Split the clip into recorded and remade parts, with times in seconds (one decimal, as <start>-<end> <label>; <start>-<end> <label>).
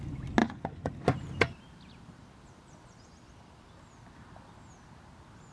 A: 0.0-0.4 recorded; 0.4-0.9 remade; 0.9-5.5 recorded